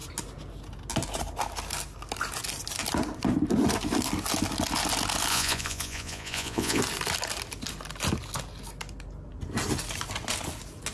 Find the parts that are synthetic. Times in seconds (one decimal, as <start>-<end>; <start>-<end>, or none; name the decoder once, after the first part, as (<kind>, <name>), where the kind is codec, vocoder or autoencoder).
5.3-6.8 (vocoder, Vocos)